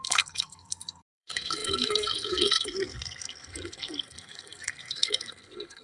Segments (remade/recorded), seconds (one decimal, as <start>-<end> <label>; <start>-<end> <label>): 0.0-5.8 remade